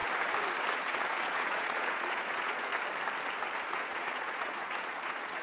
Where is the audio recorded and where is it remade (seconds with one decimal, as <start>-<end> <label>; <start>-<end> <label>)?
0.0-0.7 recorded; 0.7-2.7 remade; 2.7-3.7 recorded; 3.7-5.4 remade